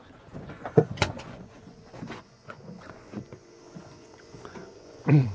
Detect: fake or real fake